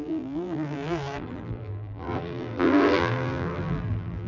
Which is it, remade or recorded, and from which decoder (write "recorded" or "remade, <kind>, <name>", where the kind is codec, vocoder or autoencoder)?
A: remade, vocoder, BigVGAN v2